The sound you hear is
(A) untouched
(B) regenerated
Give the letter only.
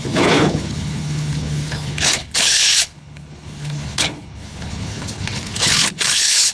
B